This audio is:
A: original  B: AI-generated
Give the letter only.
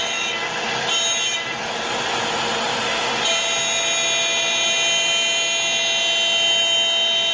A